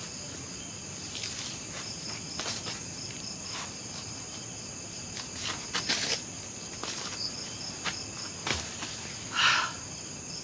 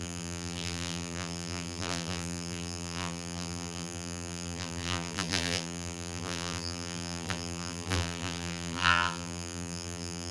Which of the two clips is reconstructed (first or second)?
second